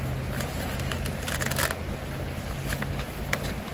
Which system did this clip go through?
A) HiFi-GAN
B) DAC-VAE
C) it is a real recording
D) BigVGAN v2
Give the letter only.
C